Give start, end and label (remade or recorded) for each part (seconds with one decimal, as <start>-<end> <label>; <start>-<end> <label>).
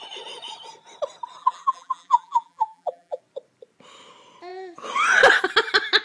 0.0-1.4 recorded; 1.4-3.2 remade; 3.2-6.0 recorded